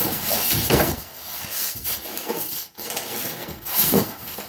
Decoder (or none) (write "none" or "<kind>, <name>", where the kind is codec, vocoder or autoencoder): codec, SNAC